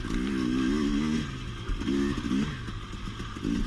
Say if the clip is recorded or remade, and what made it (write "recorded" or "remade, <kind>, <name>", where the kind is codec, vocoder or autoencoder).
recorded